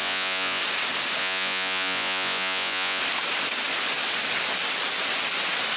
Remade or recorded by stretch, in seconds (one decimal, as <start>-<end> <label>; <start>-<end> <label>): 0.0-0.6 remade; 0.6-1.2 recorded; 1.2-3.0 remade; 3.0-5.8 recorded